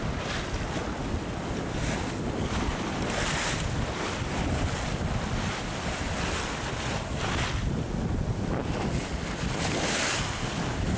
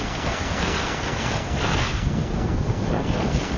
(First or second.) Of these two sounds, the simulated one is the second